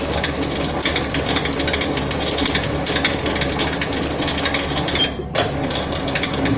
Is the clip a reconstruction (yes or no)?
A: yes